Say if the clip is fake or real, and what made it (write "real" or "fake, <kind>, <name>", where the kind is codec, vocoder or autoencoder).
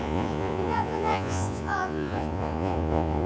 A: fake, vocoder, Vocos